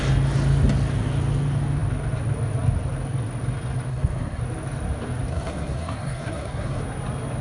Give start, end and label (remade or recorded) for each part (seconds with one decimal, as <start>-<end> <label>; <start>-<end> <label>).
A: 0.0-3.9 recorded; 3.9-4.4 remade; 4.4-5.3 recorded; 5.3-6.8 remade; 6.8-7.4 recorded